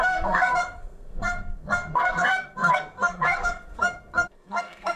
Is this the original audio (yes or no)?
no